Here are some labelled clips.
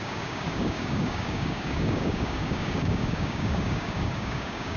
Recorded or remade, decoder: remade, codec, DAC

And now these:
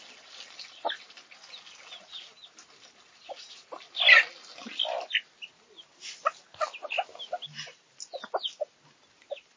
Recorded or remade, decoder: recorded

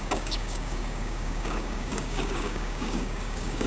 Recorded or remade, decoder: remade, codec, DAC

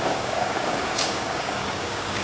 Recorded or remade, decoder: remade, codec, DAC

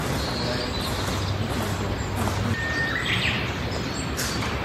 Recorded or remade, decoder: recorded